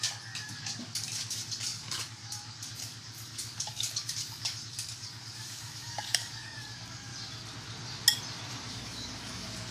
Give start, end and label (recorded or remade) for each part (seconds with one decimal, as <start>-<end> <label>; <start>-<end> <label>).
0.0-7.1 remade; 7.1-8.7 recorded; 8.7-9.7 remade